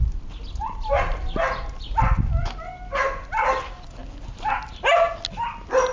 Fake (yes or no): no